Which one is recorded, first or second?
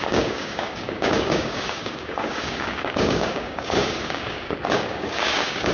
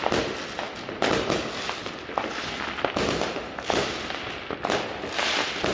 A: second